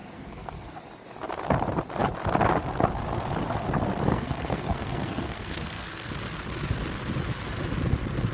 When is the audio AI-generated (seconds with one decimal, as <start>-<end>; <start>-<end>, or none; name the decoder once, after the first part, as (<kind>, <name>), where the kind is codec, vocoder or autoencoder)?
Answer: 0.0-0.8 (codec, SNAC); 4.1-6.1

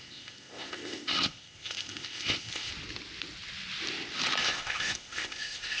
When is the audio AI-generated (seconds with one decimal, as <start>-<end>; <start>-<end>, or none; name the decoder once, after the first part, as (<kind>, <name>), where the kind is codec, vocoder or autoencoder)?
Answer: 0.0-2.7 (codec, ZipCodec); 4.4-5.8